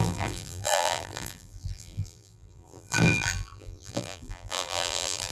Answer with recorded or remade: remade